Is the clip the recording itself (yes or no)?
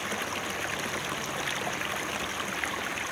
yes